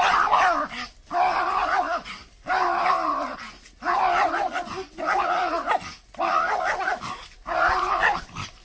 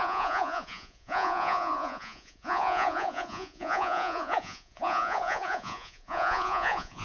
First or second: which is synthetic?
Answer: second